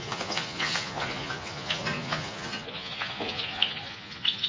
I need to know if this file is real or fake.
fake